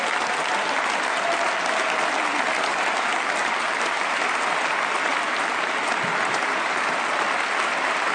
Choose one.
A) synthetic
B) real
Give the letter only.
B